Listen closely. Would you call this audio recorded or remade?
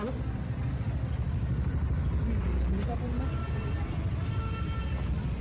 recorded